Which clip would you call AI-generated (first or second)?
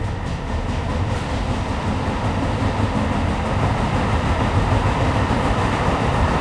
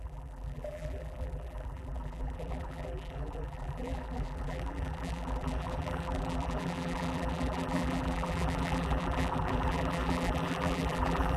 second